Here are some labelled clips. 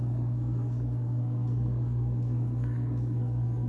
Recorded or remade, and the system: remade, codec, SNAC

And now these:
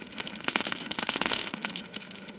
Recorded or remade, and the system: remade, autoencoder, DAC-VAE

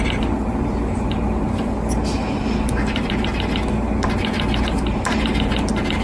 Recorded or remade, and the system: recorded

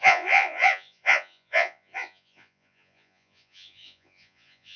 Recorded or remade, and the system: remade, vocoder, Vocos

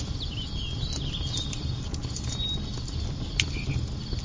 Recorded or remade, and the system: recorded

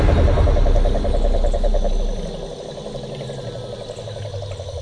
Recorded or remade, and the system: recorded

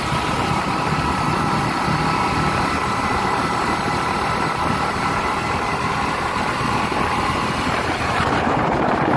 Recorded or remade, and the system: remade, vocoder, BigVGAN v2